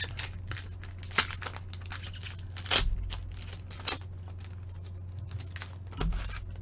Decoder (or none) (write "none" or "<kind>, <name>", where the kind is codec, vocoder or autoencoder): none